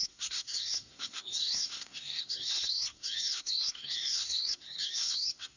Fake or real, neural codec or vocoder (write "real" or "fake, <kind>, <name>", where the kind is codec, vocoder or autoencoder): fake, codec, SNAC